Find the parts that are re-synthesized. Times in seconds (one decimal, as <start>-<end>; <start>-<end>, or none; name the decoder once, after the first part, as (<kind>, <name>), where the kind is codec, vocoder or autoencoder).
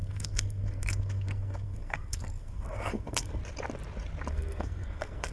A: 0.0-3.4 (codec, SNAC); 4.3-5.3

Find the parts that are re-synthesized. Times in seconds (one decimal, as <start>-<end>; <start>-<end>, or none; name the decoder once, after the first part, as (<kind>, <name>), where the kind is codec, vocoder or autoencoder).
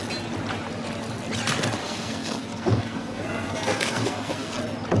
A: 1.8-4.6 (codec, SNAC)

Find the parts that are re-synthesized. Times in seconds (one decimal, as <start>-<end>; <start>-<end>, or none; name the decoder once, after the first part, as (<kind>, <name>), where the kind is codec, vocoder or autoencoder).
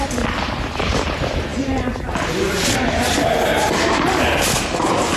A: none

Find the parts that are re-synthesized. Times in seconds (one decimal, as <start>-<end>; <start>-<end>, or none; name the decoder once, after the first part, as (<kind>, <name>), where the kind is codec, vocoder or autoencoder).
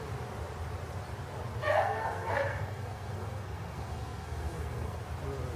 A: 1.6-5.0 (codec, SNAC)